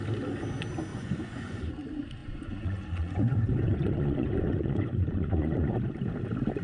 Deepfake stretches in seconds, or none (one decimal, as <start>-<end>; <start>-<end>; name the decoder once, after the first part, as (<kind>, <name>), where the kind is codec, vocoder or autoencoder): 0.9-1.6 (vocoder, Vocos); 2.2-5.8